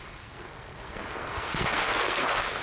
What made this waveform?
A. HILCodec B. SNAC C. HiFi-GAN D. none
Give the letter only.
B